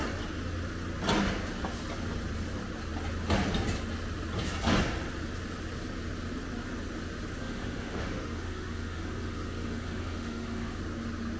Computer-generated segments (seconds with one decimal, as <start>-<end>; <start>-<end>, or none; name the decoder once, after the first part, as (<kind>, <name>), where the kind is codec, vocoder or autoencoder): 7.4-10.8 (autoencoder, DAC-VAE)